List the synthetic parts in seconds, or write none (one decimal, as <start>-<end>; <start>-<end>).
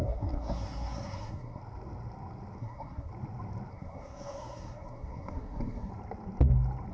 0.0-1.6; 2.6-3.1; 3.7-5.9